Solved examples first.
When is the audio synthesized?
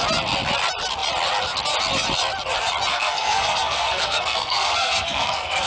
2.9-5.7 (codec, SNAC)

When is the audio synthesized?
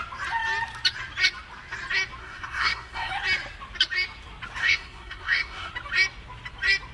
2.2-3.1 (codec, SNAC); 4.6-5.7